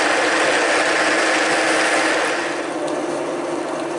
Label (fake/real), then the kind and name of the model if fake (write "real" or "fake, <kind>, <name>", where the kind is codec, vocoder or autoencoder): real